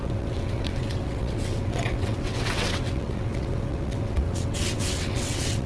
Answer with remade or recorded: remade